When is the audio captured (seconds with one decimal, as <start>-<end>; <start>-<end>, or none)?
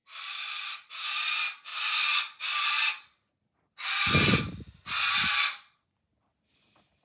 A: 0.9-1.7; 2.9-7.0